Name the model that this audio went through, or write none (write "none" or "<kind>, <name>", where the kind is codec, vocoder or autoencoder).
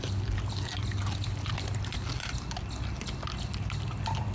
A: none